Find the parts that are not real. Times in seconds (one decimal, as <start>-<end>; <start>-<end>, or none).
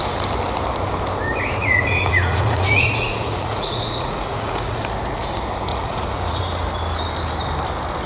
1.6-4.8; 5.7-6.4